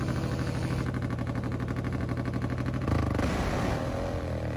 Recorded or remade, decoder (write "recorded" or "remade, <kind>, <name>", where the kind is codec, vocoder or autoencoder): recorded